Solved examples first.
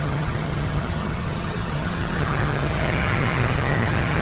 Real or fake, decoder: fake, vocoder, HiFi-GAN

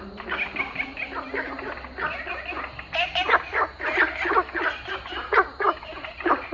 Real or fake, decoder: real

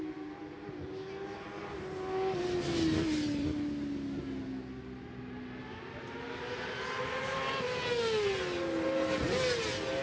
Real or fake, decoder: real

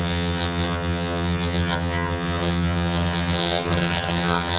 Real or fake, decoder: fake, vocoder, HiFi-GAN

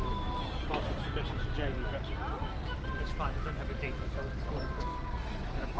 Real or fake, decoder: real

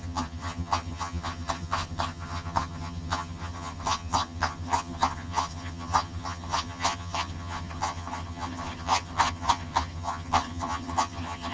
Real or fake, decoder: fake, vocoder, HiFi-GAN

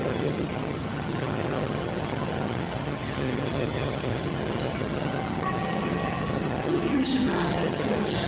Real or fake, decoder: fake, vocoder, HiFi-GAN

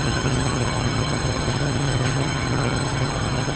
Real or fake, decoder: fake, vocoder, HiFi-GAN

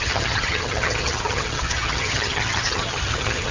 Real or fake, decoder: fake, vocoder, HiFi-GAN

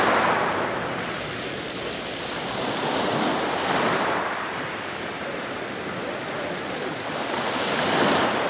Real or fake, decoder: real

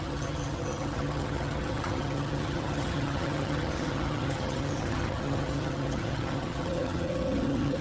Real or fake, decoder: fake, vocoder, HiFi-GAN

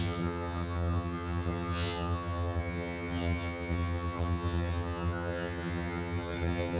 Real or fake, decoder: fake, vocoder, HiFi-GAN